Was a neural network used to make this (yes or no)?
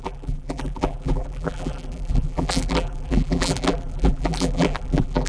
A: yes